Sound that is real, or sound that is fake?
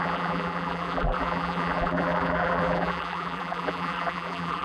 fake